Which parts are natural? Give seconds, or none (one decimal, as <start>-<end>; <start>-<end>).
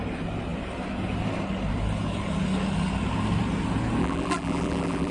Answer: 0.0-4.0